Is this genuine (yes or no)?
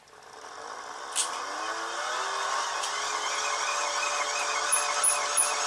yes